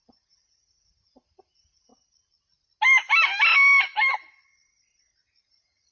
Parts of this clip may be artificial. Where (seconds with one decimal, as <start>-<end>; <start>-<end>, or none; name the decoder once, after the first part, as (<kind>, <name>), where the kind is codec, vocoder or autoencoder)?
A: 0.0-1.9 (vocoder, Vocos); 5.4-5.9

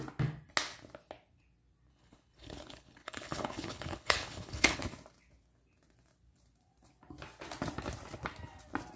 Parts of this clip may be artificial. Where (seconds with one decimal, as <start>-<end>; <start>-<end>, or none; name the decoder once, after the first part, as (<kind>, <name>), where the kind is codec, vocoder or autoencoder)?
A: 1.9-4.8 (codec, HILCodec)

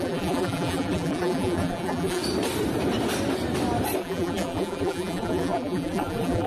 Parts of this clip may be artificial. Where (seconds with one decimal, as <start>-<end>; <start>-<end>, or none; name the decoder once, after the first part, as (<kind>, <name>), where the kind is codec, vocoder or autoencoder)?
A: 0.0-2.2 (vocoder, BigVGAN v2); 4.0-6.5

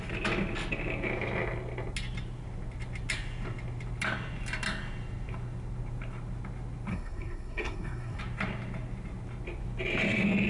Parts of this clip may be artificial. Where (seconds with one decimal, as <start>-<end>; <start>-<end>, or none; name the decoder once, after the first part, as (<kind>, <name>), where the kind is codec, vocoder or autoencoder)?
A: 6.9-8.2 (codec, SNAC)

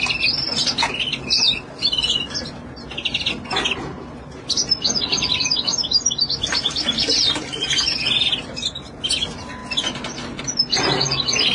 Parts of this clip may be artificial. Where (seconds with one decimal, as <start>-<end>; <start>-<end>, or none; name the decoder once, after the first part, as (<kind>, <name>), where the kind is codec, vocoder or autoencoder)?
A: none

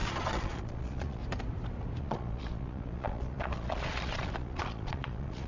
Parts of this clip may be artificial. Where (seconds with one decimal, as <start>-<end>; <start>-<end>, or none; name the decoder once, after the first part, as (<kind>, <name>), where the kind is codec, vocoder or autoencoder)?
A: 0.0-1.2 (vocoder, Vocos); 2.0-5.5